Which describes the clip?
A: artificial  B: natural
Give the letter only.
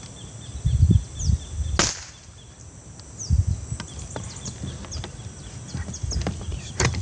B